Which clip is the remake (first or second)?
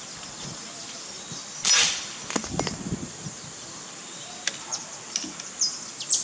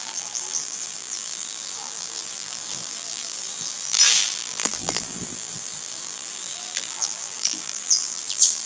second